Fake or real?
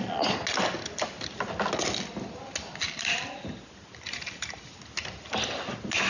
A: real